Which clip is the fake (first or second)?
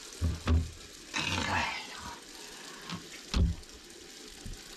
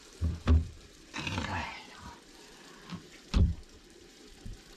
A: second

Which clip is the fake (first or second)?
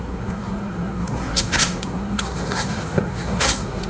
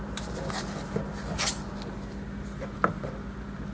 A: first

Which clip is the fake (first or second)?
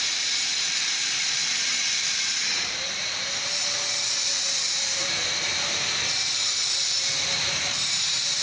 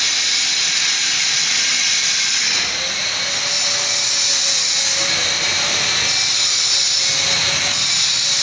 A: first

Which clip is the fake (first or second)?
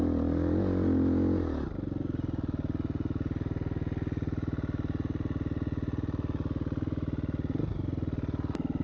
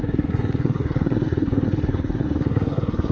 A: second